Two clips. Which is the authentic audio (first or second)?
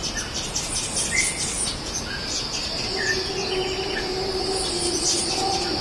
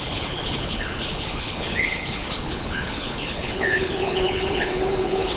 first